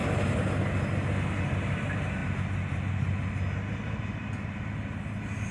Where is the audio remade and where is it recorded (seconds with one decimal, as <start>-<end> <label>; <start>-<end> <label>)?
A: 0.0-5.5 recorded